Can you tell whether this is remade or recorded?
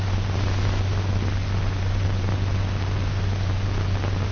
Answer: recorded